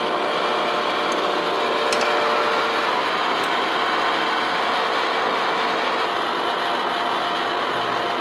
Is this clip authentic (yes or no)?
yes